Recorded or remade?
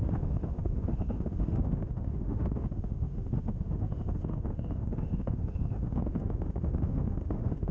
remade